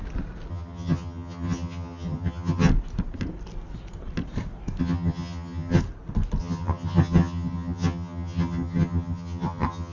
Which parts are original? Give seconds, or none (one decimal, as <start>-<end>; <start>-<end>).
0.0-0.5; 2.7-4.8; 5.8-6.4